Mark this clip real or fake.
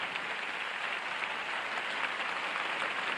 real